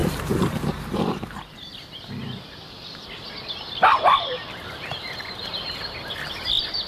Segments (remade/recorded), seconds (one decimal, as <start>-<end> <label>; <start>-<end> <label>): 0.0-1.0 recorded; 1.0-6.9 remade